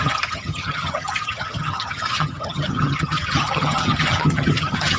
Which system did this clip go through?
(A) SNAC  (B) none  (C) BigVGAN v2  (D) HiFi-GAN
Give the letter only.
D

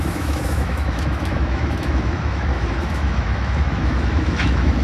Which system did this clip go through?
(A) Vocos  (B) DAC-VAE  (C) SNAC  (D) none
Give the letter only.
B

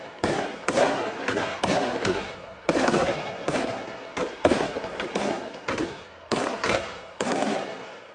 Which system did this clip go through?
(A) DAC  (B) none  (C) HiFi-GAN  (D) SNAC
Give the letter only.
D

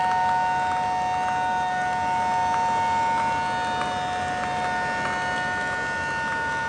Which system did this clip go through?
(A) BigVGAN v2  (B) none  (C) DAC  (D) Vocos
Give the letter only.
B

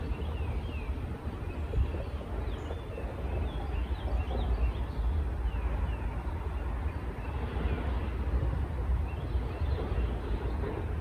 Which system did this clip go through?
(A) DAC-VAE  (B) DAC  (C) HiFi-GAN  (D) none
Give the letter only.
D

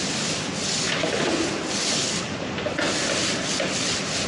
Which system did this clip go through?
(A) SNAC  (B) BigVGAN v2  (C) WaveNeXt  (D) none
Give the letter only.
D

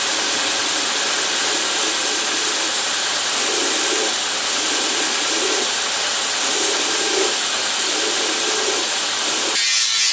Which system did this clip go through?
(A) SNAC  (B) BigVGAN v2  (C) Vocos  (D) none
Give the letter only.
D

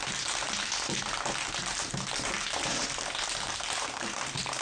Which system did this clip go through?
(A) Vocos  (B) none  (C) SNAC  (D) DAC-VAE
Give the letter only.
B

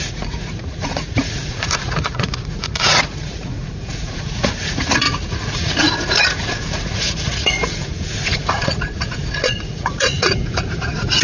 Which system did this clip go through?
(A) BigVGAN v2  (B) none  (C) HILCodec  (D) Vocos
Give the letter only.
D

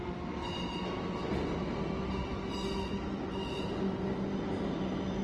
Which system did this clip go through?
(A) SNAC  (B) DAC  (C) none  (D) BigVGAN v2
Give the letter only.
C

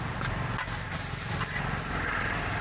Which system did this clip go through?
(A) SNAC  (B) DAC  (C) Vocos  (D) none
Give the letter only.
D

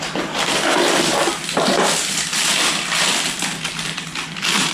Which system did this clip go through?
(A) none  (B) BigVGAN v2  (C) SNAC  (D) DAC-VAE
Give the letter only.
B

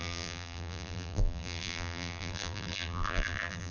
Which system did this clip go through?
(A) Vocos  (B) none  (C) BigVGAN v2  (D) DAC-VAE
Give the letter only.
C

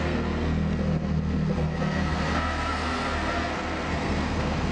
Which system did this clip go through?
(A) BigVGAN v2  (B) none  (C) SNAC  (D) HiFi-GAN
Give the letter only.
C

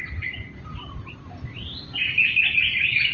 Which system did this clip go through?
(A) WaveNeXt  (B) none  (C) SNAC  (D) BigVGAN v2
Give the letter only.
B